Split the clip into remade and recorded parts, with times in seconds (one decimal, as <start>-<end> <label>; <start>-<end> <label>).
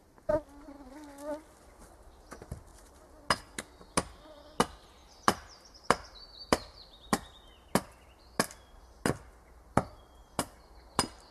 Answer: 0.0-5.0 recorded; 5.0-6.8 remade; 6.8-11.3 recorded